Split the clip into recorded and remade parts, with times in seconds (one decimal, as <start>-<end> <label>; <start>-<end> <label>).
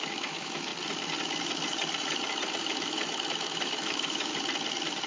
0.0-0.7 remade; 0.7-2.6 recorded; 2.6-4.3 remade; 4.3-5.1 recorded